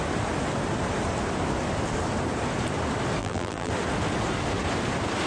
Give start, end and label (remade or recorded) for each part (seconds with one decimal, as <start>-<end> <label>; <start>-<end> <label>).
0.0-3.2 recorded; 3.2-3.7 remade; 3.7-5.3 recorded